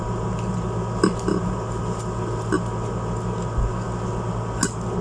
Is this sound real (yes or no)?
yes